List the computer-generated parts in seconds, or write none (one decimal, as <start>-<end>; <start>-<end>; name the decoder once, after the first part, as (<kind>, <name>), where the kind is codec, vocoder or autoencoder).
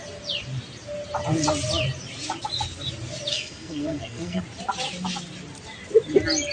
3.3-4.4 (codec, SNAC)